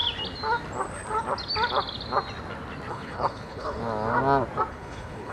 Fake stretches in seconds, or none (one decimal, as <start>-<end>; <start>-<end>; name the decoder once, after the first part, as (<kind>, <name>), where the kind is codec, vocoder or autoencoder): 2.9-3.8 (codec, HILCodec); 4.7-5.3